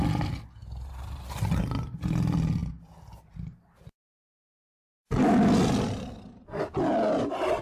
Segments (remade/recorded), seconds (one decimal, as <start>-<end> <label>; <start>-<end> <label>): 0.0-7.6 recorded